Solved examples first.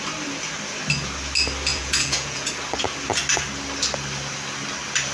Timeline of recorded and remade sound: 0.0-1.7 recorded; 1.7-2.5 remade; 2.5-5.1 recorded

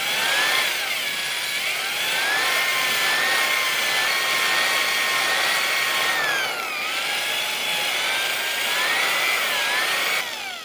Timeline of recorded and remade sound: 0.0-10.6 recorded

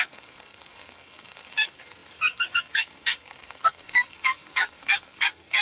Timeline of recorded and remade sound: 0.0-5.6 remade

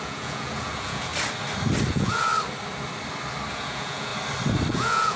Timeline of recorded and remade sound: 0.0-1.1 remade; 1.1-1.9 recorded; 1.9-2.3 remade; 2.3-3.5 recorded; 3.5-4.1 remade; 4.1-4.7 recorded; 4.7-5.2 remade

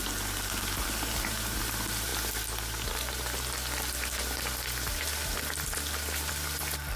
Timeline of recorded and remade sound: 0.0-7.0 recorded

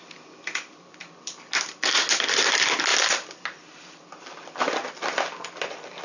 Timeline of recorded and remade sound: 0.0-6.0 recorded

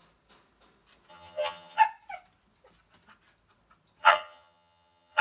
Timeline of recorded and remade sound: 0.0-1.1 recorded; 1.1-1.8 remade; 1.8-4.0 recorded; 4.0-5.2 remade